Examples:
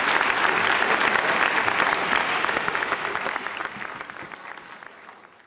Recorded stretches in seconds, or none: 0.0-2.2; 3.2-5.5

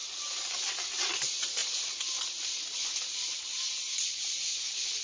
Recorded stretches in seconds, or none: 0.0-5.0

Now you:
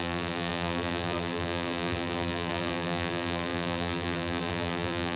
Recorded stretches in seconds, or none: none